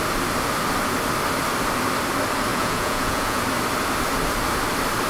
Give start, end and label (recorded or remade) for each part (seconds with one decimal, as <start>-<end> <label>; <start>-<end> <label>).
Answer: 0.0-2.5 recorded; 2.5-3.4 remade; 3.4-5.1 recorded